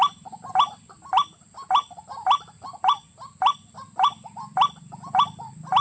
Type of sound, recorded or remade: recorded